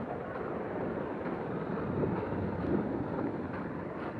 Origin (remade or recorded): recorded